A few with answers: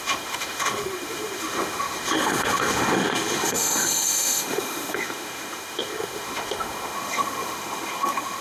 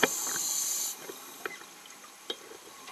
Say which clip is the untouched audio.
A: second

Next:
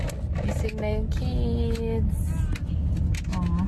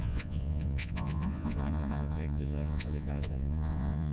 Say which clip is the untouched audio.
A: first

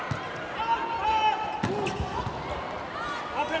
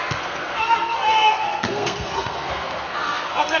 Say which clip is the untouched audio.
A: first